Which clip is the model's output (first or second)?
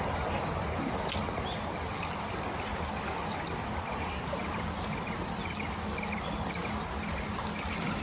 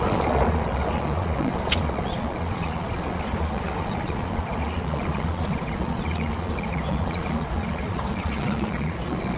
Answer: second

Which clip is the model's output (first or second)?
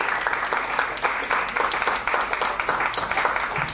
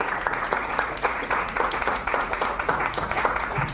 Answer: second